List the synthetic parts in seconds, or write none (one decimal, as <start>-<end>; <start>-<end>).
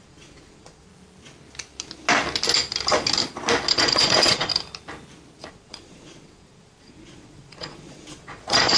0.0-0.9; 3.7-4.5; 5.5-8.8